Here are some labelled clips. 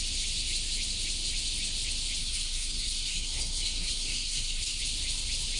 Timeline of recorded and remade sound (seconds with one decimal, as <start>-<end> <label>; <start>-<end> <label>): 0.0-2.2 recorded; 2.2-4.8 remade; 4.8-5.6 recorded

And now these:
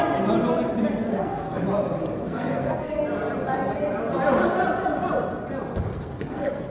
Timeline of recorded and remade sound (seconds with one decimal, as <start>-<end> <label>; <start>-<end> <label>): 0.0-1.1 recorded; 1.1-1.6 remade; 1.6-2.0 recorded; 2.0-3.0 remade; 3.0-5.9 recorded; 5.9-6.7 remade

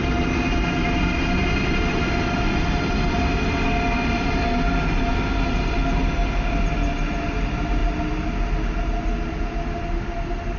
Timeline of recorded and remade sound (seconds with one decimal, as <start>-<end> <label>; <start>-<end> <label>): 0.0-10.6 recorded

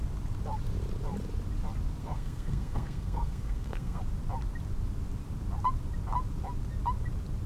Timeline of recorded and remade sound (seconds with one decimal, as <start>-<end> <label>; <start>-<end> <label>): 0.0-2.0 recorded; 2.0-4.0 remade; 4.0-7.5 recorded

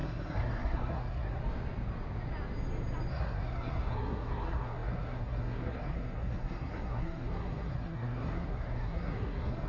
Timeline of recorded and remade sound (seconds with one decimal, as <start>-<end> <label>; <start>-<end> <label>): 0.0-1.4 remade; 1.4-3.1 recorded; 3.1-9.7 remade